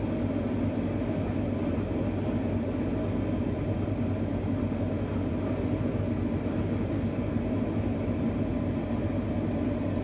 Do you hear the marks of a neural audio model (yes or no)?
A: no